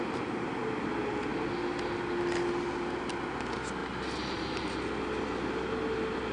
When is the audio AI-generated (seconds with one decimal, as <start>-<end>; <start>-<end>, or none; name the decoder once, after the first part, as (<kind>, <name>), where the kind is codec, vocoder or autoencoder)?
none